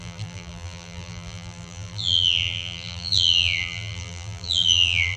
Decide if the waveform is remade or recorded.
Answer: remade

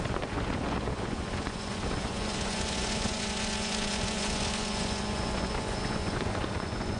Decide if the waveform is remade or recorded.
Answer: remade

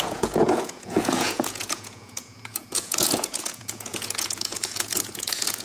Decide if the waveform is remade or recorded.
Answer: remade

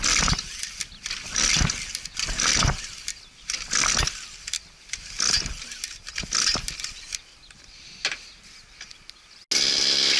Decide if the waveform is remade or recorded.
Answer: recorded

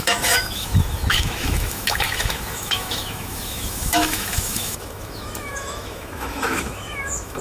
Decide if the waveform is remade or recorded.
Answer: remade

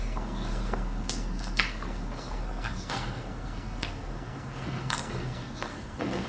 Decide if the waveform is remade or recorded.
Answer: remade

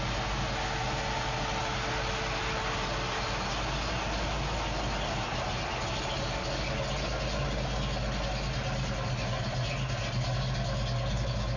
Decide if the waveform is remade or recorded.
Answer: recorded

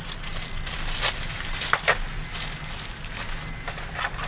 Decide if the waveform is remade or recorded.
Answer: recorded